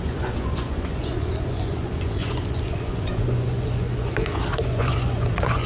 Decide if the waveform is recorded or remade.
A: remade